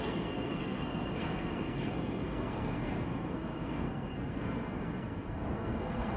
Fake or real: fake